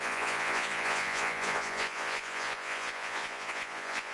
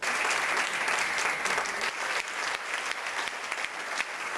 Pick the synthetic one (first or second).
first